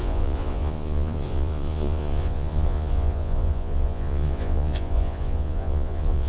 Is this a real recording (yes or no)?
no